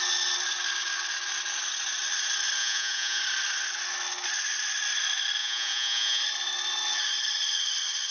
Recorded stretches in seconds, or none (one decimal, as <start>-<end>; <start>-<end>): 0.0-2.6; 3.2-5.4; 6.2-8.1